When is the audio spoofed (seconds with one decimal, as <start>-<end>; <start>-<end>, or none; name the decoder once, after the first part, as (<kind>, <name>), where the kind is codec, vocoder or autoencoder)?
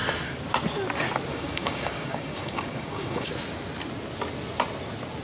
1.3-3.3 (codec, DAC)